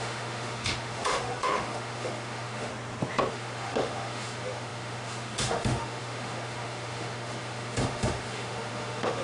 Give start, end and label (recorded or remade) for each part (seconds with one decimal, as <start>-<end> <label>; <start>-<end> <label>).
0.0-2.7 remade; 2.7-3.3 recorded; 3.3-9.2 remade